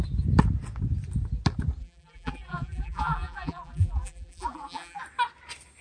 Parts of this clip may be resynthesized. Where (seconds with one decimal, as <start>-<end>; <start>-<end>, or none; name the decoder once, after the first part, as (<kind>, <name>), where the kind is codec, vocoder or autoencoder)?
1.8-5.0 (vocoder, BigVGAN v2)

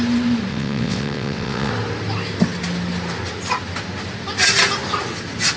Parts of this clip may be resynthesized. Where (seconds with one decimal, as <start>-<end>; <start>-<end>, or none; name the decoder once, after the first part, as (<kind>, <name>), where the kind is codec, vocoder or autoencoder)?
0.5-1.7 (vocoder, WaveNeXt)

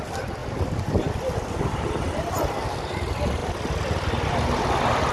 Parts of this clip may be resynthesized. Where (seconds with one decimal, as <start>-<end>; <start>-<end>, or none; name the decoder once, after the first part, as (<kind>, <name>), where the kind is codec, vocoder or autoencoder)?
none

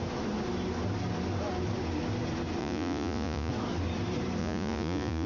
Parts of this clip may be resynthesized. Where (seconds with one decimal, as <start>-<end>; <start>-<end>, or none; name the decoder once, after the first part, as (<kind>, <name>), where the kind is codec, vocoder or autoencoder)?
2.6-3.5 (vocoder, Vocos); 4.4-5.3

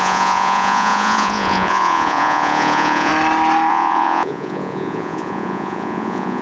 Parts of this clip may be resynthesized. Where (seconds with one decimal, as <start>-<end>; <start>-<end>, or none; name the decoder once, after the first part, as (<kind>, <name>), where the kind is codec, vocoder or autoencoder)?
0.0-3.1 (vocoder, Vocos); 3.7-6.4

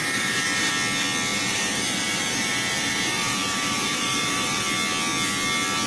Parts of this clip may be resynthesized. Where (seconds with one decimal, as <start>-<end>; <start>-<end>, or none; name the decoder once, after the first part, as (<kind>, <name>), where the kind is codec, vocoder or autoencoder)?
0.0-0.7 (vocoder, BigVGAN v2); 1.3-4.6

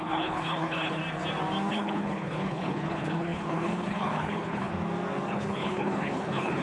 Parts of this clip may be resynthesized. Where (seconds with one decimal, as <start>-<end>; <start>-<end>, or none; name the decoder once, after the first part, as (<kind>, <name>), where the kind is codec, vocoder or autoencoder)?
0.0-1.0 (codec, HILCodec); 1.7-4.7; 5.3-6.6